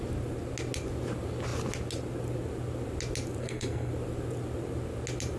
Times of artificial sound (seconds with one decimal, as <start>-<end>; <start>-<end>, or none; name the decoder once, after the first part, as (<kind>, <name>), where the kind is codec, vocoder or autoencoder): 3.4-3.9 (codec, SNAC)